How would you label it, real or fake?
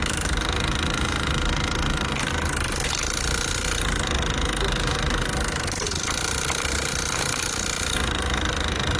real